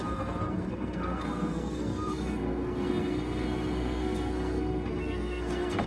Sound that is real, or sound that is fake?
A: fake